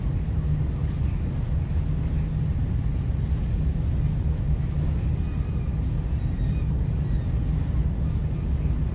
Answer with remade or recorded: recorded